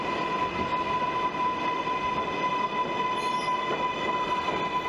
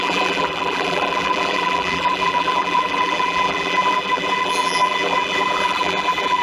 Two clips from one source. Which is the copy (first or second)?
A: second